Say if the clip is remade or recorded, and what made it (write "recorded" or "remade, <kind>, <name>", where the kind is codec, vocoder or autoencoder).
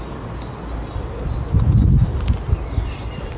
recorded